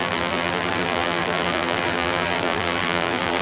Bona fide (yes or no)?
no